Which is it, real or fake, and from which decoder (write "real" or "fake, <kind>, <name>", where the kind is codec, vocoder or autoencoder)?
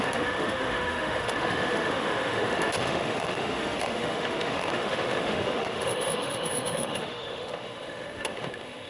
fake, autoencoder, DAC-VAE